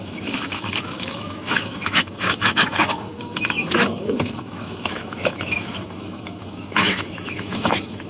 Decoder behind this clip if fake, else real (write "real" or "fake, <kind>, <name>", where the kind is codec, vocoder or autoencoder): fake, autoencoder, DAC-VAE